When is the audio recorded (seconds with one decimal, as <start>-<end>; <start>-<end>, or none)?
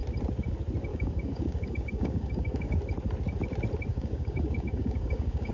0.0-0.9; 2.8-3.9